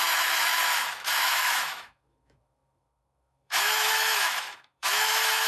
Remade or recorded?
remade